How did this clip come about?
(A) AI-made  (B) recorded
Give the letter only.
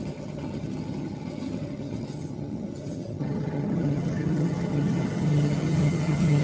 A